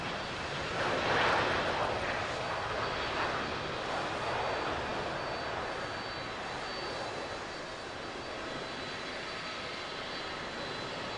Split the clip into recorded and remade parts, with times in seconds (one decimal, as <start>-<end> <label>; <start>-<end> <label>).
0.0-11.2 recorded